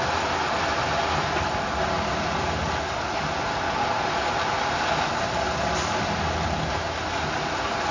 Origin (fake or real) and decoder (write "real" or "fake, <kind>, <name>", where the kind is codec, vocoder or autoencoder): real